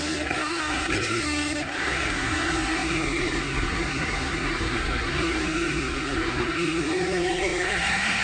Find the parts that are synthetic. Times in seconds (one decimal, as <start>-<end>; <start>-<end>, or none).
0.0-8.2